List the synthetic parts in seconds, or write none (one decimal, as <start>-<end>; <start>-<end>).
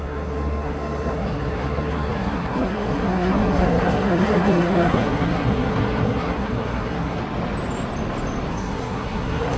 0.0-7.2; 8.5-9.6